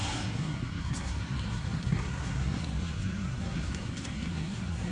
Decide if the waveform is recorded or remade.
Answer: remade